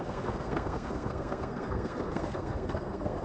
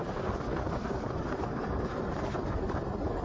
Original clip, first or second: second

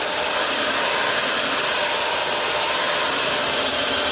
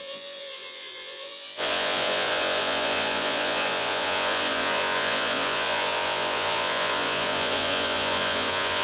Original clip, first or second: first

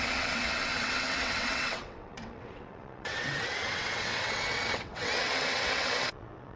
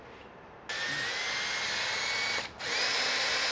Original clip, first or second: second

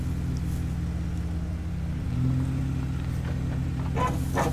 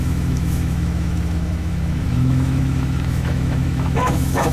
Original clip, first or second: first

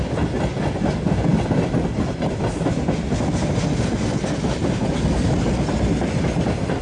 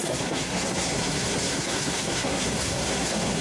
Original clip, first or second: first